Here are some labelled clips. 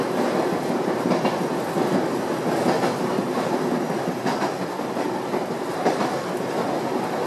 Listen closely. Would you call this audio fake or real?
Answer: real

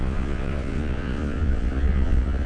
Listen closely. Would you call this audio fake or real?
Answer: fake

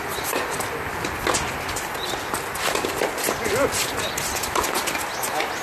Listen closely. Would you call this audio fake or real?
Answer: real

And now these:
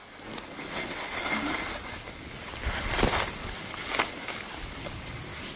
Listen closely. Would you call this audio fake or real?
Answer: real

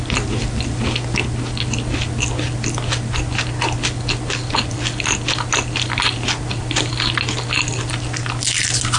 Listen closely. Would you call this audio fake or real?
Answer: real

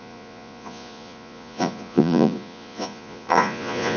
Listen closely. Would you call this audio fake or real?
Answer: fake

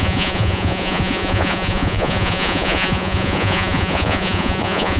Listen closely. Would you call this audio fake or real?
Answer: fake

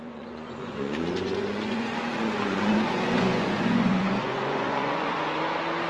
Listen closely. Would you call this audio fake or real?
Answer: fake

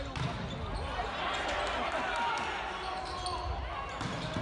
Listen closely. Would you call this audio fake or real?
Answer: real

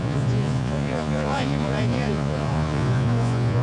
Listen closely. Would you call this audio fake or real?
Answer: fake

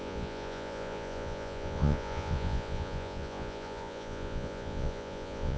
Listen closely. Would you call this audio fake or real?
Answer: fake